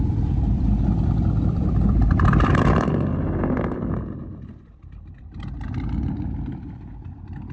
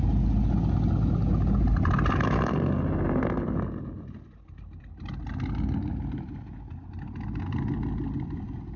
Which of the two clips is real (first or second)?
second